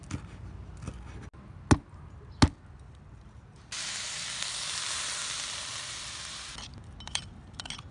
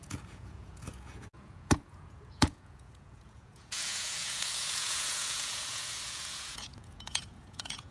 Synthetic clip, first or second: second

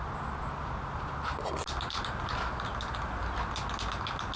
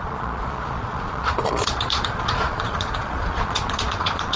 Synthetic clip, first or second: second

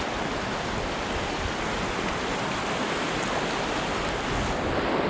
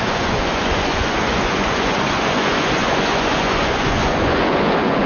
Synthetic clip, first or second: second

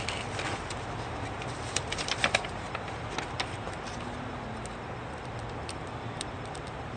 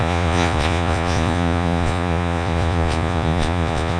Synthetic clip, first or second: second